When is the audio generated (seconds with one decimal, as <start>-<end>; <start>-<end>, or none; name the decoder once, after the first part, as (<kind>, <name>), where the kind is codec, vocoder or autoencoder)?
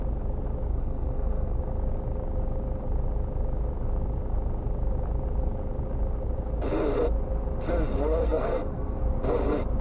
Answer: 0.7-1.6 (codec, SNAC); 8.2-9.0